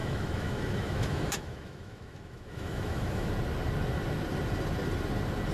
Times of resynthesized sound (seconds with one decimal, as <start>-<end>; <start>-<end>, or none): 0.0-3.3